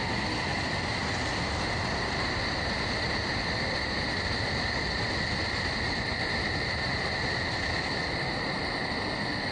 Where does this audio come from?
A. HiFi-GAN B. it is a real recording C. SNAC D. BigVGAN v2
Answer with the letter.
B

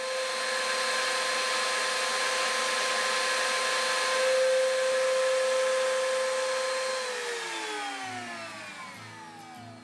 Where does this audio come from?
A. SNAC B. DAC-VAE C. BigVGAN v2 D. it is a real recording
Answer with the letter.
D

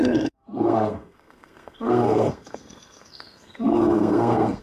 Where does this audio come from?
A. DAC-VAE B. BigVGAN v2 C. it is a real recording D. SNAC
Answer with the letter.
D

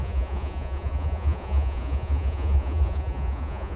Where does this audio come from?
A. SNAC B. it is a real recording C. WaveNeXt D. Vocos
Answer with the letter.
D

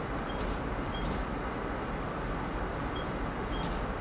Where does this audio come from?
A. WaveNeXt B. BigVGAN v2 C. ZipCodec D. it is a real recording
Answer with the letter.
D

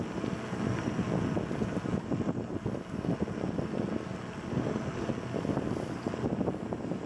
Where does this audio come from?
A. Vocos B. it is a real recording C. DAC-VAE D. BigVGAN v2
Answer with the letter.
B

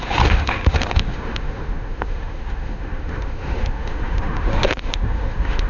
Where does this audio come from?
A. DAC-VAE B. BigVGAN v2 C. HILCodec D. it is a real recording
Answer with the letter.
A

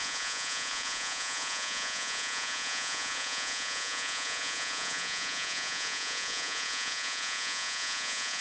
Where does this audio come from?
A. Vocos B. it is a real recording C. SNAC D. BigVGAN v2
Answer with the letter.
A